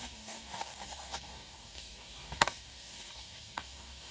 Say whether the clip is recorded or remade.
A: remade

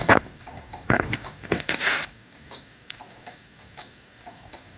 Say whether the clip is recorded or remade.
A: remade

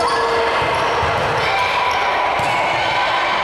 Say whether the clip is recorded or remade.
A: recorded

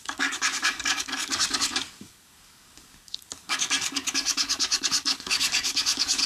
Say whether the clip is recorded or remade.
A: remade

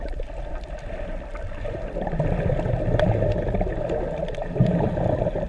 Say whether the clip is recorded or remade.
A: recorded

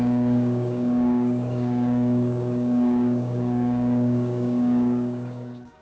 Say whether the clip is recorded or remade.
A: remade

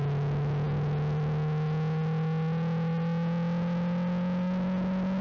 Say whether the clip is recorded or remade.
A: recorded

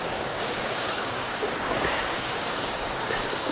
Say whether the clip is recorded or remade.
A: remade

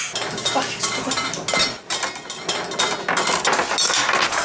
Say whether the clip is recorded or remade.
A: recorded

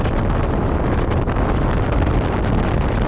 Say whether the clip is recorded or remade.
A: recorded